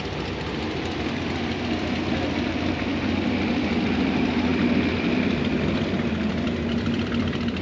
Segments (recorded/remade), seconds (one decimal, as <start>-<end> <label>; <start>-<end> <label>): 0.0-2.9 recorded; 2.9-4.1 remade; 4.1-4.5 recorded; 4.5-7.6 remade